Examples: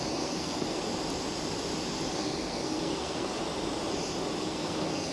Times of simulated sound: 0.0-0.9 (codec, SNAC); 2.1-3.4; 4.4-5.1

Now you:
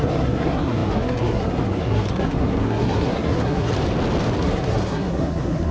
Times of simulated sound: 0.0-3.7 (codec, SNAC); 4.4-5.7

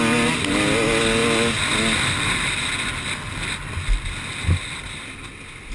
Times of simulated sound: none

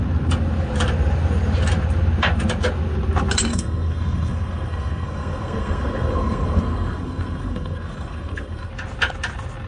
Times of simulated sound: 3.5-8.7 (codec, SNAC)

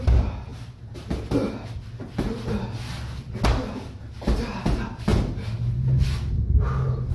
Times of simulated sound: none

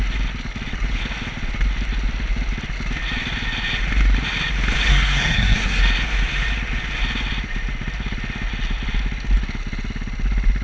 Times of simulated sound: 4.9-5.8 (codec, SNAC)

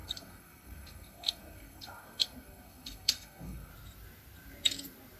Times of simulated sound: 0.0-3.7 (codec, SNAC)

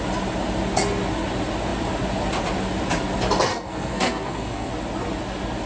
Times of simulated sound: 3.5-4.7 (codec, SNAC)